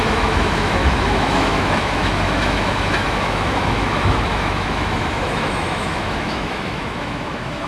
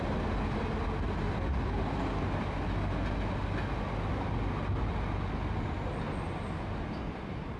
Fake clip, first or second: first